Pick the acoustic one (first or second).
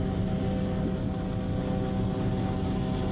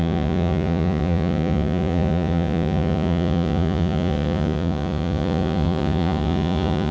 first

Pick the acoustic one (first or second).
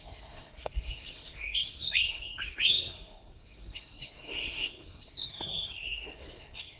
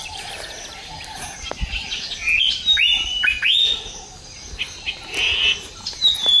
second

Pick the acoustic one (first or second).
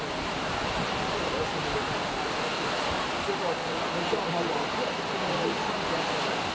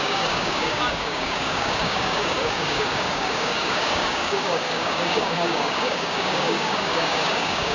first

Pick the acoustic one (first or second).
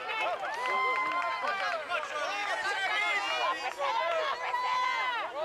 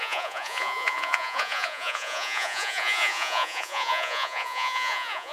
first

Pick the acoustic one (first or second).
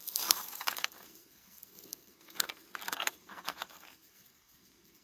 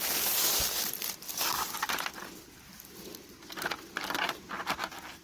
second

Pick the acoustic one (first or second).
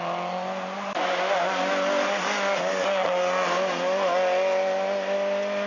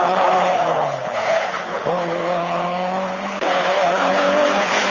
first